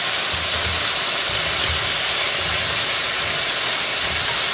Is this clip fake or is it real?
real